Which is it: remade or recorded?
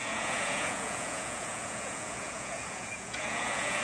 remade